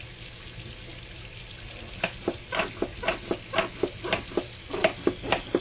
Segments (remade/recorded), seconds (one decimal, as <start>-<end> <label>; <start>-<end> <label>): 0.0-5.6 recorded